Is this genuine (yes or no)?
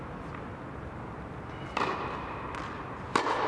yes